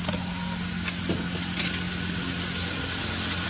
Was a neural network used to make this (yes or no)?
no